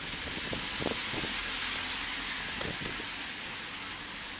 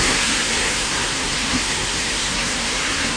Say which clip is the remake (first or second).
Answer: second